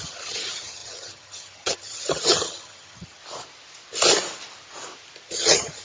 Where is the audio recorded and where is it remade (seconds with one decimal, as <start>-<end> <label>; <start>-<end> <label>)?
0.0-3.2 remade; 3.2-5.3 recorded; 5.3-5.8 remade